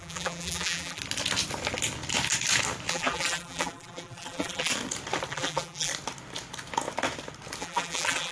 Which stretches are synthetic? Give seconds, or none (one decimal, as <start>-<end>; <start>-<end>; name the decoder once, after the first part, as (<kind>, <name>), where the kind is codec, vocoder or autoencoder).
0.0-1.0 (vocoder, BigVGAN v2); 2.9-4.7; 5.3-5.9; 7.6-8.3